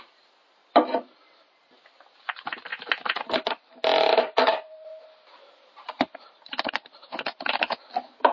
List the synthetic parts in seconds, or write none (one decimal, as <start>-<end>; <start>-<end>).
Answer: 4.9-7.6